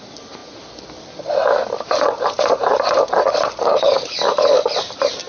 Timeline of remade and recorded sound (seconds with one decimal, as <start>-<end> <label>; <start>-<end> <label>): 0.0-5.3 recorded

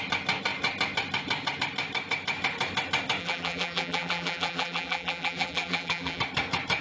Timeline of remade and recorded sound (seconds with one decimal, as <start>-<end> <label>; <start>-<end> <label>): 0.0-3.2 recorded; 3.2-6.2 remade; 6.2-6.8 recorded

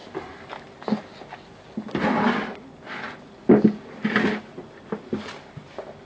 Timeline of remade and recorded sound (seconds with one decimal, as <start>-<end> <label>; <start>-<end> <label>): 0.0-6.1 recorded

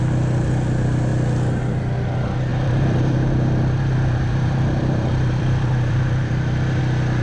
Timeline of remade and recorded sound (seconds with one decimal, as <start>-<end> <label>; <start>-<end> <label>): 0.0-2.5 recorded; 2.5-6.8 remade; 6.8-7.2 recorded

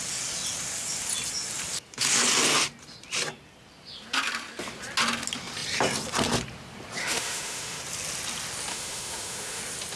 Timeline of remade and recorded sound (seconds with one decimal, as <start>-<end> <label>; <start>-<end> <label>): 0.0-7.0 recorded; 7.0-7.8 remade; 7.8-8.7 recorded; 8.7-9.6 remade; 9.6-10.0 recorded